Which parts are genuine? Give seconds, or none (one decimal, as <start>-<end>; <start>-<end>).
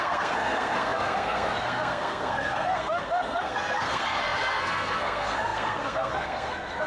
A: none